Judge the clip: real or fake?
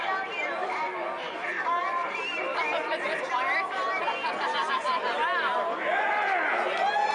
real